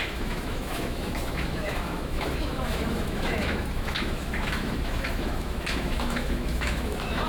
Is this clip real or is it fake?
fake